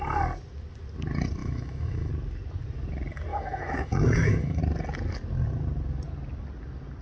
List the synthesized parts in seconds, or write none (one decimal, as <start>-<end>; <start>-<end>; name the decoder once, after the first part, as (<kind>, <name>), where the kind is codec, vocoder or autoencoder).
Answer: 1.4-2.1 (autoencoder, DAC-VAE); 3.3-4.6